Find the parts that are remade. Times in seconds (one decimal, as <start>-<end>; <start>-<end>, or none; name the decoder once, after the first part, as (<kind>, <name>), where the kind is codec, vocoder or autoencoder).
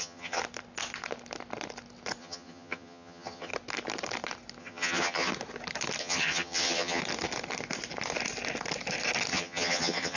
0.0-0.4 (vocoder, HiFi-GAN); 2.2-3.5; 4.6-5.3; 6.0-7.0; 9.3-10.2